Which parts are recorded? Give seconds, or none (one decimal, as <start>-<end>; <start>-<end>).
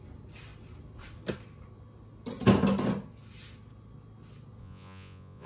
0.0-4.6